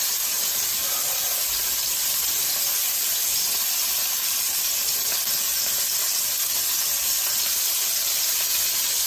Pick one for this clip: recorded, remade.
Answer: recorded